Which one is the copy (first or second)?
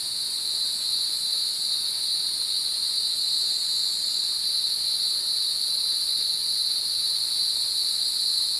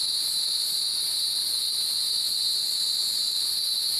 first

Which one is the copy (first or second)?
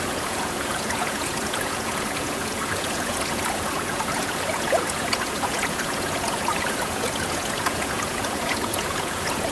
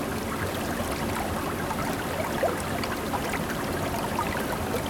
first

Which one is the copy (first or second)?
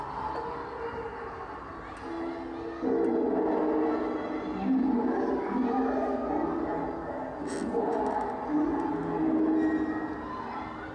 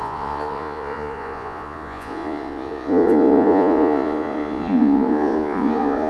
second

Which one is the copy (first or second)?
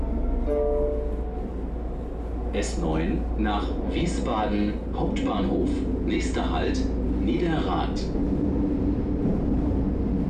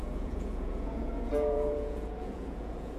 second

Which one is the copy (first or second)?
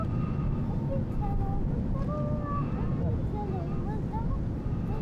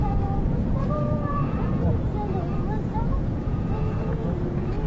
second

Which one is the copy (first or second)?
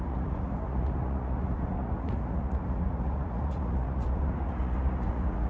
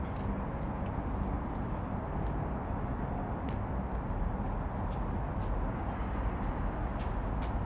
first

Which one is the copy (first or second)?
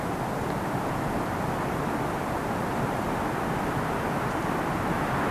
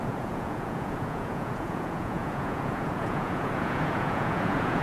second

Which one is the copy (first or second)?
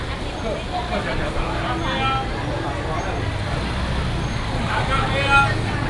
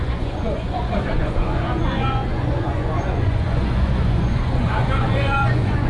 second